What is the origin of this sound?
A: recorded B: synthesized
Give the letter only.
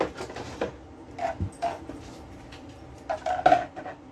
A